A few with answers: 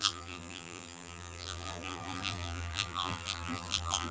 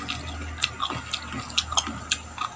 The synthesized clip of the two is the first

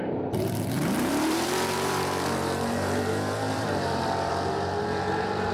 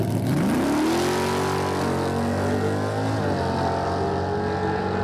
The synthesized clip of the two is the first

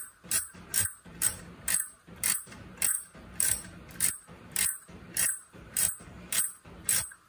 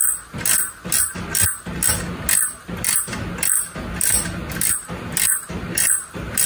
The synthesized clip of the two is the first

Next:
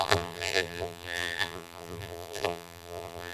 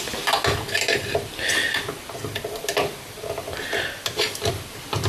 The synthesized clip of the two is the first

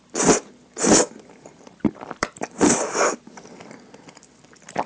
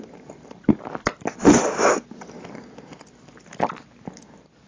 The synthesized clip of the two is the first